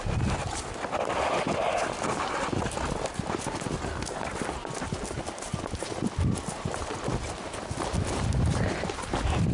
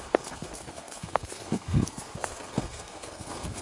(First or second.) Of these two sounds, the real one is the first